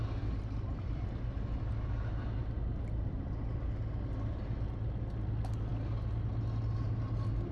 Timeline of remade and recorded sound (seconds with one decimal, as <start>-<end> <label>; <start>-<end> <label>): 0.0-7.5 recorded